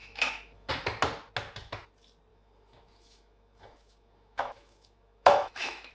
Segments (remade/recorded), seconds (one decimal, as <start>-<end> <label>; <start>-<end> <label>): 0.0-0.7 remade; 0.7-2.3 recorded; 2.3-5.9 remade